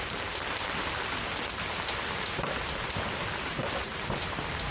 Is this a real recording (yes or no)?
yes